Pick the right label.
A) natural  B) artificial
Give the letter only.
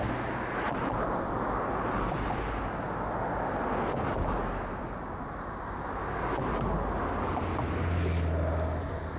A